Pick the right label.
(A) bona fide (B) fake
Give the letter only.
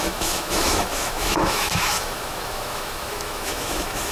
B